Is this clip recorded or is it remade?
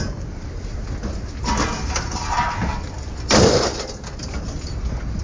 recorded